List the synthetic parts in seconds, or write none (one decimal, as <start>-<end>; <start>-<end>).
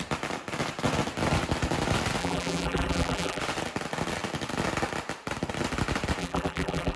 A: 2.2-3.4; 6.2-7.0